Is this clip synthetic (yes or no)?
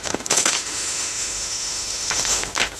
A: yes